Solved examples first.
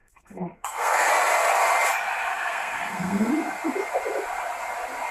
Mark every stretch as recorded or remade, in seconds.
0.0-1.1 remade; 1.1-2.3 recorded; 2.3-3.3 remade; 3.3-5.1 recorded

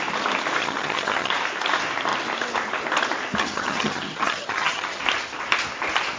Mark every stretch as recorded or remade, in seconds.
0.0-0.6 recorded; 0.6-1.3 remade; 1.3-3.4 recorded; 3.4-5.0 remade; 5.0-6.2 recorded

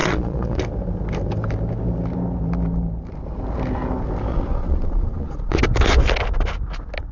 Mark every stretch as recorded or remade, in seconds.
0.0-0.6 remade; 0.6-4.3 recorded; 4.3-5.6 remade; 5.6-7.1 recorded

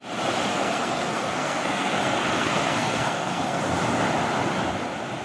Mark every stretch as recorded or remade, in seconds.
0.0-0.5 recorded; 0.5-3.6 remade; 3.6-5.2 recorded

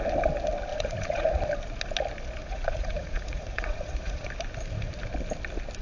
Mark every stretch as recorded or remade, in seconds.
0.0-0.7 recorded; 0.7-1.4 remade; 1.4-2.4 recorded; 2.4-4.3 remade; 4.3-5.8 recorded

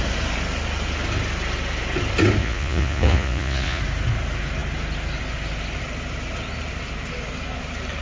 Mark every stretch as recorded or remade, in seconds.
0.0-2.4 recorded; 2.4-3.8 remade; 3.8-8.0 recorded

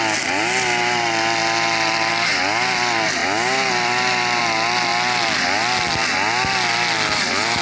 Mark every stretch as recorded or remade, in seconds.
0.0-7.6 recorded